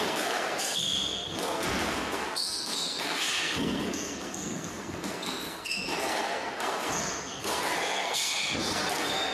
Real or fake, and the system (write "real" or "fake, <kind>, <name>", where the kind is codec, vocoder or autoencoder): fake, codec, SNAC